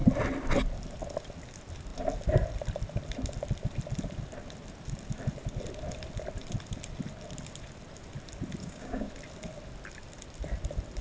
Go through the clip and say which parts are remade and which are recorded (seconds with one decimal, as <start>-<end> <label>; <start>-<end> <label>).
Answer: 0.0-8.6 recorded; 8.6-9.1 remade; 9.1-11.0 recorded